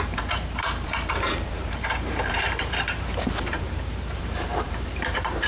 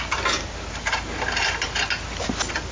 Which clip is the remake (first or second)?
first